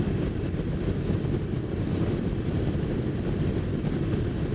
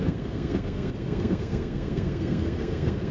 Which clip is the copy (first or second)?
second